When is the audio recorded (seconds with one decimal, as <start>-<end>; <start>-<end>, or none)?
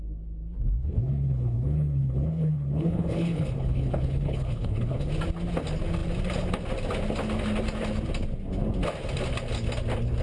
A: 0.0-0.8; 5.1-10.2